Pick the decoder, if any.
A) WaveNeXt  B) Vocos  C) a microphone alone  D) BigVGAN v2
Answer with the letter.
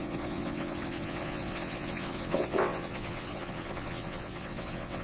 A